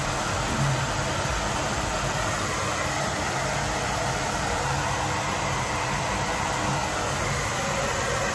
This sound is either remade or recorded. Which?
remade